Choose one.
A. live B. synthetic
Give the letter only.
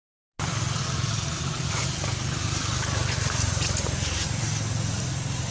A